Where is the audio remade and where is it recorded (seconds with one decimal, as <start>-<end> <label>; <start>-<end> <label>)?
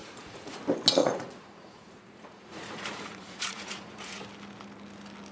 0.0-0.6 remade; 0.6-1.0 recorded; 1.0-4.2 remade; 4.2-5.3 recorded